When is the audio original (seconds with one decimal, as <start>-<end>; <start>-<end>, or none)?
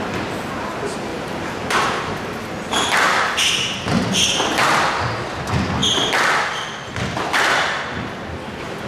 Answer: 0.0-1.1; 2.4-8.9